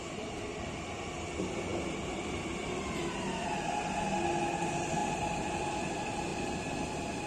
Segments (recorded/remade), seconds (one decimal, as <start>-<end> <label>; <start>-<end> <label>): 0.0-7.3 recorded